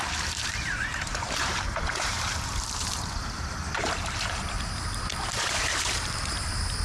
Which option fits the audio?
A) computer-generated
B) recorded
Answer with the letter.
A